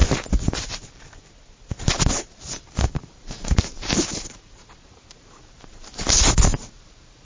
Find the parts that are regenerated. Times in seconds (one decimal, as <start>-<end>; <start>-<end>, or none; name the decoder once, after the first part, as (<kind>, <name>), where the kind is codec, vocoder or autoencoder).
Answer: 1.9-7.2 (vocoder, BigVGAN v2)